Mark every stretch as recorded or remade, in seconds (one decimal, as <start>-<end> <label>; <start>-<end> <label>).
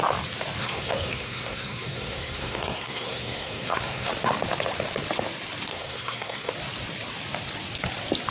0.0-0.6 recorded; 0.6-4.1 remade; 4.1-5.7 recorded; 5.7-6.5 remade; 6.5-8.3 recorded